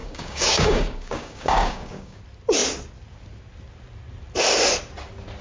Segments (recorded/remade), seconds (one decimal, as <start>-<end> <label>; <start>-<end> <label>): 0.0-2.2 remade; 2.2-5.4 recorded